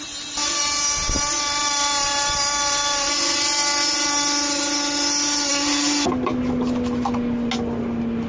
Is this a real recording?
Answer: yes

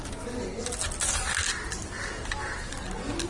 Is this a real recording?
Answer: yes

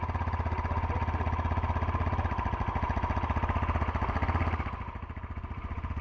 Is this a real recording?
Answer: yes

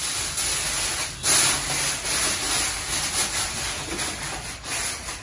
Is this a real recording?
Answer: yes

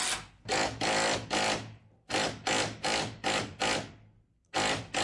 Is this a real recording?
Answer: yes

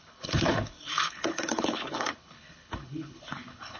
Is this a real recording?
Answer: no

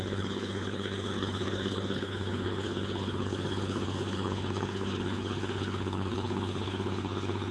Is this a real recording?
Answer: no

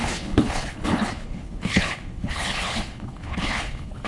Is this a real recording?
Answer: no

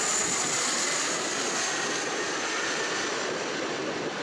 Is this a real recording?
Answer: yes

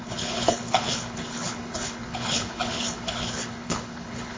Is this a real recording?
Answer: no